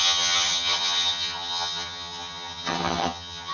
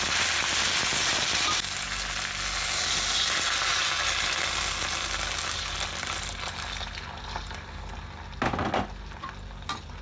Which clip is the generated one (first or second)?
first